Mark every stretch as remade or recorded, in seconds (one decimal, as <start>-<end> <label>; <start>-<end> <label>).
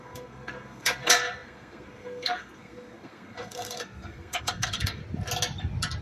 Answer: 0.0-5.0 remade; 5.0-6.0 recorded